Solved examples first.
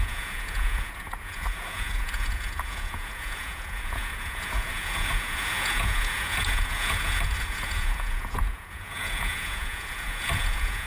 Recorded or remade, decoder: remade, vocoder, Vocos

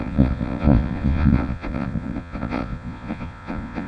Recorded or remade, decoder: remade, vocoder, Vocos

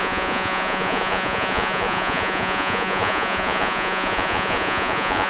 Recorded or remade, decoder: remade, vocoder, Vocos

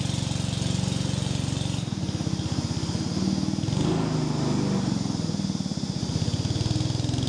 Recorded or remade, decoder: recorded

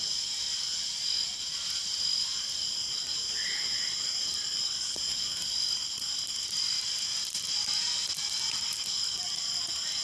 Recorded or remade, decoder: recorded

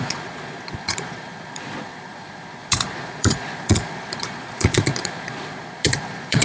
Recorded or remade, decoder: remade, vocoder, Vocos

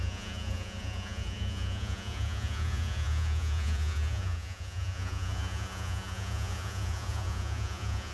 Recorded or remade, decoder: remade, vocoder, Vocos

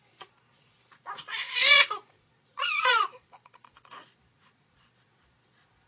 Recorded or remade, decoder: remade, vocoder, Vocos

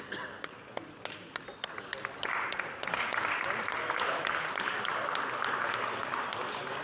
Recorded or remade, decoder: recorded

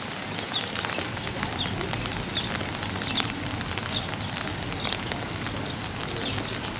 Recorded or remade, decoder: recorded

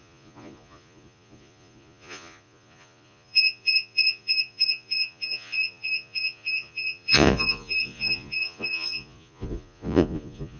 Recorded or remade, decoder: remade, vocoder, Vocos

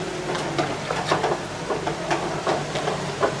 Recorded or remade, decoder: recorded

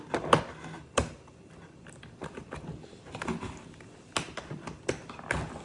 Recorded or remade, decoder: recorded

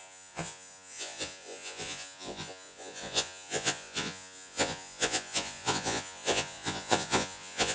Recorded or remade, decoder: remade, vocoder, Vocos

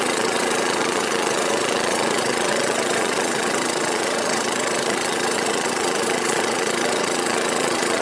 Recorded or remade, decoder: remade, vocoder, Vocos